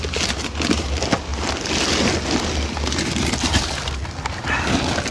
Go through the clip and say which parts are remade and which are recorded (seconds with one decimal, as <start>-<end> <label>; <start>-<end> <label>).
0.0-5.1 recorded